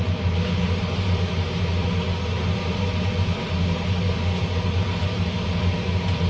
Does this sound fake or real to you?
real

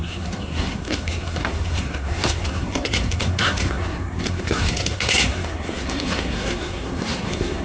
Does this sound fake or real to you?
fake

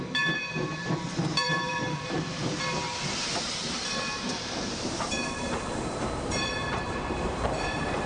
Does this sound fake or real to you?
fake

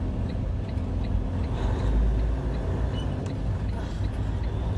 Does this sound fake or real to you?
real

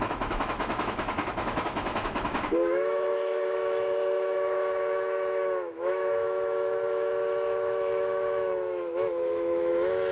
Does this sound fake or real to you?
fake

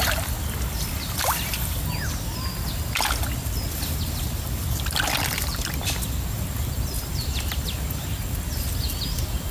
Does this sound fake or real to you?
real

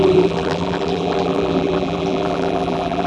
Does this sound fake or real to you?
fake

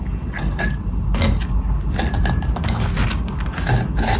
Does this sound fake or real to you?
real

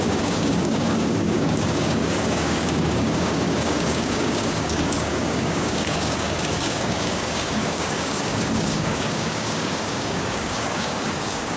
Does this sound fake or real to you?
fake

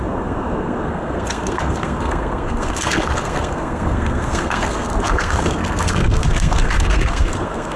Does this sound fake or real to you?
fake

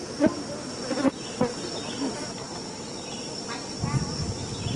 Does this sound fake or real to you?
real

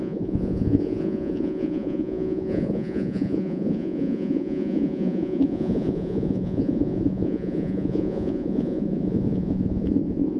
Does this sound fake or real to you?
fake